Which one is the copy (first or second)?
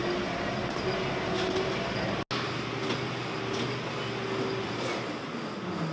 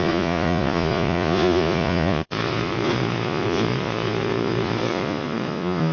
second